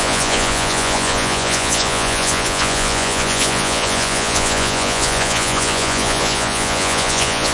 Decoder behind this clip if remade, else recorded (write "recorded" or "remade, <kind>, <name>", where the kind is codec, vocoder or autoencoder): remade, vocoder, Vocos